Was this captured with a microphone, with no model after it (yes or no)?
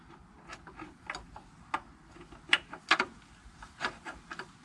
yes